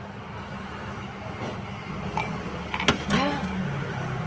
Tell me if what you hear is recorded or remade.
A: recorded